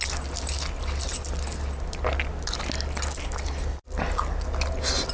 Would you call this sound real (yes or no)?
yes